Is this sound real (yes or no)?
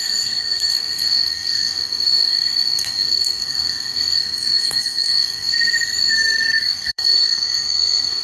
no